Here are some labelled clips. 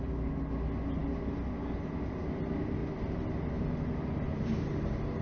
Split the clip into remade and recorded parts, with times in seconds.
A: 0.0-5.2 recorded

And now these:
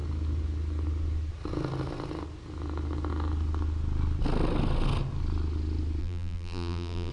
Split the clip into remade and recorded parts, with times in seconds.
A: 0.0-6.0 recorded; 6.0-7.1 remade

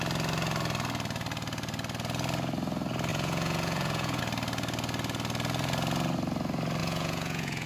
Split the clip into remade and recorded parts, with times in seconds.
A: 0.0-3.1 recorded; 3.1-4.2 remade; 4.2-6.8 recorded; 6.8-7.7 remade

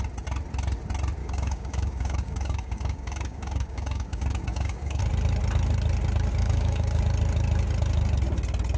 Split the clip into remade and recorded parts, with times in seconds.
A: 0.0-1.2 recorded; 1.2-5.0 remade; 5.0-6.4 recorded; 6.4-7.0 remade; 7.0-8.8 recorded

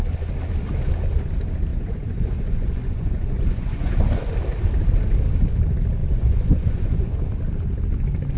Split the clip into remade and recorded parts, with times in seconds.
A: 0.0-1.7 recorded; 1.7-3.9 remade; 3.9-6.0 recorded; 6.0-7.2 remade; 7.2-8.4 recorded

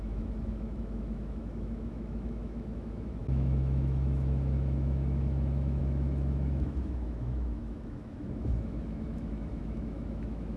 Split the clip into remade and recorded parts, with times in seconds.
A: 0.0-10.6 remade

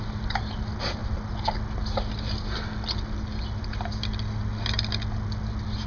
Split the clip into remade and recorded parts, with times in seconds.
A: 0.0-5.9 recorded